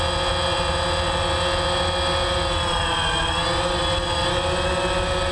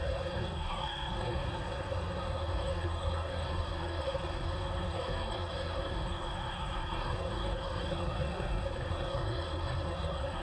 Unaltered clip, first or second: first